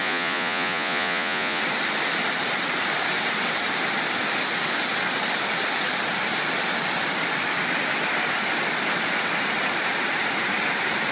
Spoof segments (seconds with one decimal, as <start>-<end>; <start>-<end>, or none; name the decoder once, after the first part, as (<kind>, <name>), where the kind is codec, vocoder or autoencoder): 0.0-1.6 (vocoder, Vocos)